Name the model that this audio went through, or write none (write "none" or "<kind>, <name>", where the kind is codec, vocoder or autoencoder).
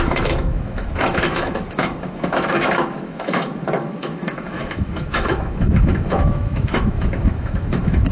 autoencoder, DAC-VAE